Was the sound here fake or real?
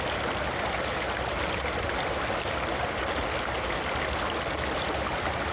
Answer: real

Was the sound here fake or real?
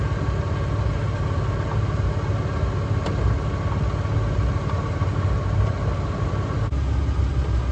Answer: real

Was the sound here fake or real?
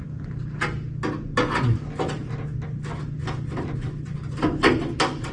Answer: real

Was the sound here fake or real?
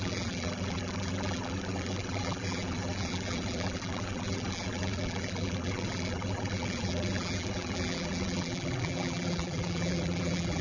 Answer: fake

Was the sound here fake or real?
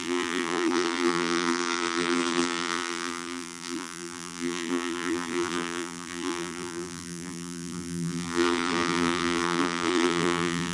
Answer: fake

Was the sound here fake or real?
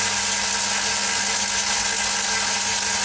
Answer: real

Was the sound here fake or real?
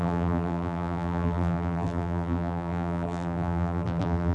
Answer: fake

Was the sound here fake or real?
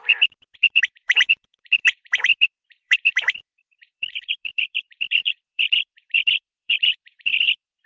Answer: fake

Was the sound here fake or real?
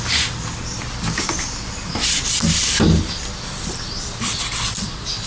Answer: fake